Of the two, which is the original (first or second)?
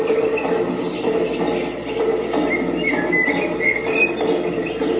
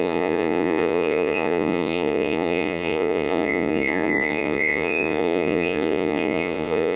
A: first